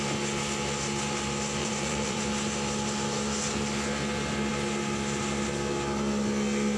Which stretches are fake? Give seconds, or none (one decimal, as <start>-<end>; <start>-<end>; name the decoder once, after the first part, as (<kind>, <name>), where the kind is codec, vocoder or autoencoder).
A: 1.6-2.2 (vocoder, Vocos)